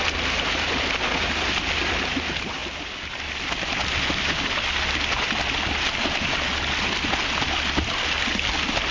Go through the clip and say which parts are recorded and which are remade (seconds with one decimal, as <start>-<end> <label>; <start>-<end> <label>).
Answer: 0.0-8.9 recorded